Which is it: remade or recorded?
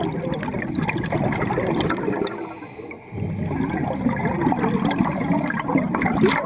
recorded